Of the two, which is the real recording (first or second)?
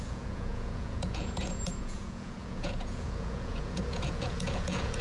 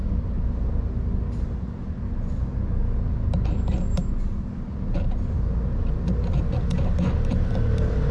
second